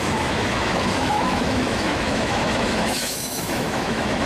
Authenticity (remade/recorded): remade